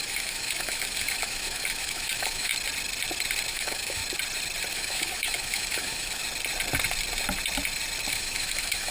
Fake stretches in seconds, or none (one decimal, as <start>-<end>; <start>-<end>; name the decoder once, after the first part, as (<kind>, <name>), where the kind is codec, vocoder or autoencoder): 0.0-2.5 (autoencoder, DAC-VAE); 3.5-4.0; 4.7-6.2; 8.1-8.9